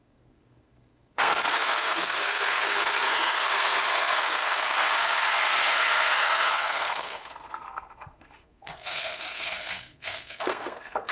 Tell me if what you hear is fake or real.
fake